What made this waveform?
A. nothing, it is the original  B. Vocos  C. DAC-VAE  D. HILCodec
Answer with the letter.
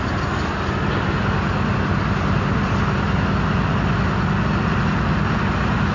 A